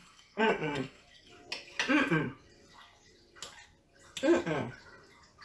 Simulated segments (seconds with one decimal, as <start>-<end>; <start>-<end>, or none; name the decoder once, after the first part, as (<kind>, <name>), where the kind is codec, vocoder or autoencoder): 0.0-1.3 (codec, SNAC)